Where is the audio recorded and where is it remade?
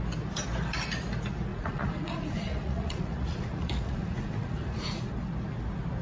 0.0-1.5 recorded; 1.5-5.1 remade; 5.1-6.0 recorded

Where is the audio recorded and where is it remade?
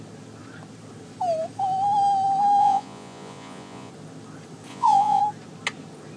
0.0-2.6 recorded; 2.6-3.9 remade; 3.9-4.7 recorded; 4.7-5.2 remade; 5.2-6.2 recorded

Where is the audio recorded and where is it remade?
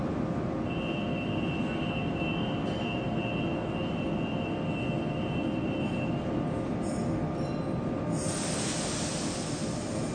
0.0-10.1 recorded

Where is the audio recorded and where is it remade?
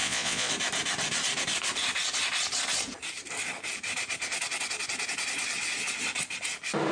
0.0-0.5 remade; 0.5-6.9 recorded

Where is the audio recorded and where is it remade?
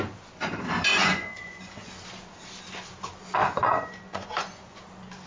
0.0-0.9 recorded; 0.9-1.9 remade; 1.9-3.4 recorded; 3.4-4.8 remade; 4.8-5.3 recorded